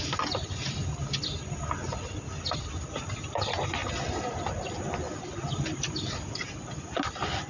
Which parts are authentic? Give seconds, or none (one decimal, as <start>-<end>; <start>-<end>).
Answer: 0.0-7.5